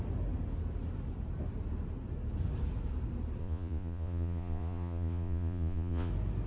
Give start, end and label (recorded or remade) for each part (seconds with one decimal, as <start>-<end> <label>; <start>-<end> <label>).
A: 0.0-3.4 recorded; 3.4-6.1 remade; 6.1-6.5 recorded

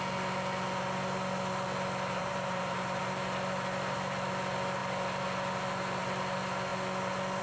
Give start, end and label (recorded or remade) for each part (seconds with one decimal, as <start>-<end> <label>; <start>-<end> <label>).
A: 0.0-2.2 recorded; 2.2-3.0 remade; 3.0-7.4 recorded

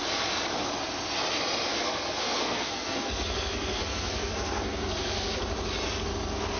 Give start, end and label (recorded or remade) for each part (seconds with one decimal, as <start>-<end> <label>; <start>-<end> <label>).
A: 0.0-1.7 recorded; 1.7-5.4 remade; 5.4-6.6 recorded